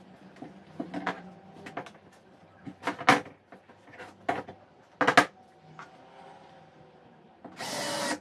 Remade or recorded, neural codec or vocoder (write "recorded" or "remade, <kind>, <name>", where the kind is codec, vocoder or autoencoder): recorded